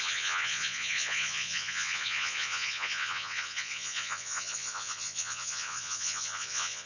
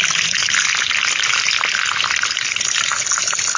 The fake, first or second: first